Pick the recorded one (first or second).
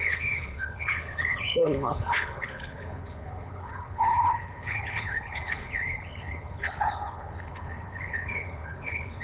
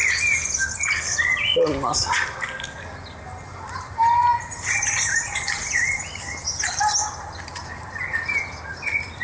second